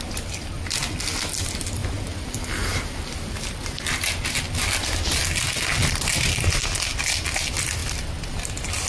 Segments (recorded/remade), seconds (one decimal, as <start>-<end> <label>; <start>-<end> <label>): 0.0-8.9 recorded